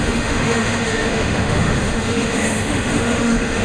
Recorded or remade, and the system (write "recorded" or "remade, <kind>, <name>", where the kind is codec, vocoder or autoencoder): remade, autoencoder, DAC-VAE